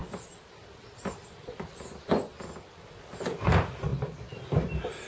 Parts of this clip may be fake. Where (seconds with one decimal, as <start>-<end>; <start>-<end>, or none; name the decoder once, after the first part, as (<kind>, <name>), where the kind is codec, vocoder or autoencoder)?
none